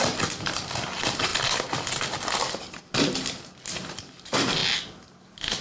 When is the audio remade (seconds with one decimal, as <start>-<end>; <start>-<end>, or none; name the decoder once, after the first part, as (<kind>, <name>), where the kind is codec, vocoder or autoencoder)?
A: 0.0-1.3 (vocoder, BigVGAN v2); 1.9-4.6